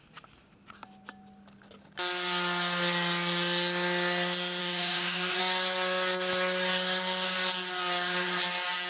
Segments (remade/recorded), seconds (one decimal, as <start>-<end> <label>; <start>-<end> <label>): 0.0-4.6 recorded; 4.6-5.4 remade; 5.4-8.9 recorded